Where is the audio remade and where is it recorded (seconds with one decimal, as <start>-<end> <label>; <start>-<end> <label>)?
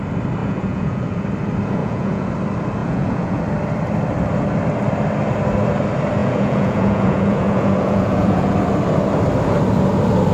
0.0-0.4 recorded; 0.4-1.2 remade; 1.2-1.8 recorded; 1.8-2.3 remade; 2.3-2.8 recorded; 2.8-3.4 remade; 3.4-6.2 recorded; 6.2-8.5 remade; 8.5-10.3 recorded